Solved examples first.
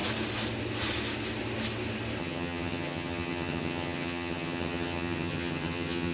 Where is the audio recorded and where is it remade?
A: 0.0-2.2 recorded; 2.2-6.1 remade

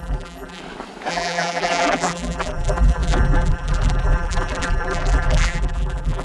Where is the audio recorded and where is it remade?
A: 0.0-0.6 remade; 0.6-1.1 recorded; 1.1-6.2 remade